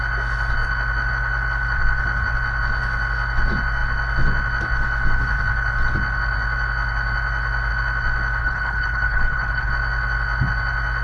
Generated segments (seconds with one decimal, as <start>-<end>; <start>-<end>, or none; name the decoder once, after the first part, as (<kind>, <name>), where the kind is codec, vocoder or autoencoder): 8.4-9.7 (codec, HILCodec)